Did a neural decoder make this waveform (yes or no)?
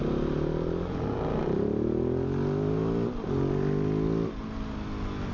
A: no